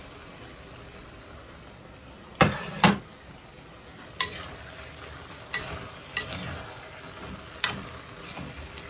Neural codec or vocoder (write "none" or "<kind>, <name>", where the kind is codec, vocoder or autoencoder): none